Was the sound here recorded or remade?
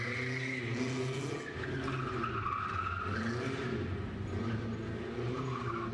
recorded